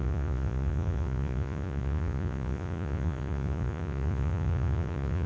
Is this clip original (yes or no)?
no